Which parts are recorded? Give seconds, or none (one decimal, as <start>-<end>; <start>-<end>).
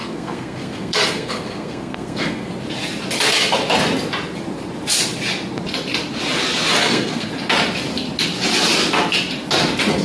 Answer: 2.5-6.8; 7.3-10.0